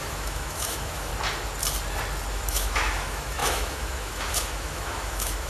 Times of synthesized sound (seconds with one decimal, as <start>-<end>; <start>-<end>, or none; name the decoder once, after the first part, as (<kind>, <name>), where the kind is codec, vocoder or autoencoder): 0.0-1.1 (autoencoder, DAC-VAE); 2.3-5.5